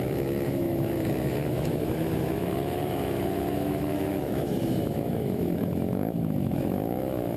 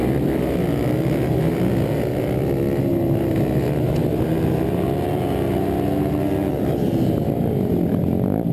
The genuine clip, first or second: second